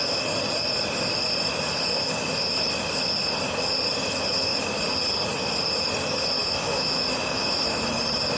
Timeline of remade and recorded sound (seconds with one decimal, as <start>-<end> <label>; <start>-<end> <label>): 0.0-6.4 recorded; 6.4-7.8 remade; 7.8-8.4 recorded